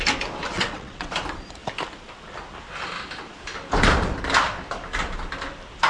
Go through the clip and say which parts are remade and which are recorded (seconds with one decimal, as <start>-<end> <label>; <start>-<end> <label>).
0.0-0.5 recorded; 0.5-1.1 remade; 1.1-5.9 recorded